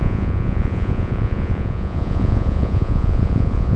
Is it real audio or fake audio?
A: fake